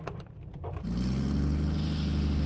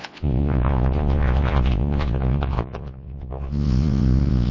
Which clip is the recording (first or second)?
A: first